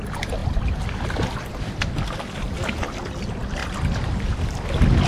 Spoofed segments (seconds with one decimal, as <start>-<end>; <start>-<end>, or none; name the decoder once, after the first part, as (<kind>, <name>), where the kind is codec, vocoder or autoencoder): none